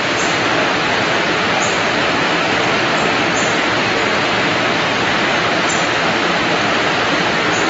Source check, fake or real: real